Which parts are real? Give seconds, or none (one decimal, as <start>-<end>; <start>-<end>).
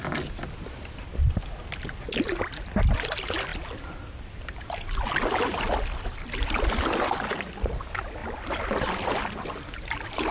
0.0-10.3